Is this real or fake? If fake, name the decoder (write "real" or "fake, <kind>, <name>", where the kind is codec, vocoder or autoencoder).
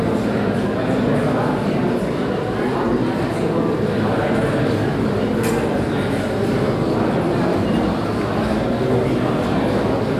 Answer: real